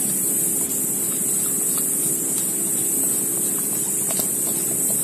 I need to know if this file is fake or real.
real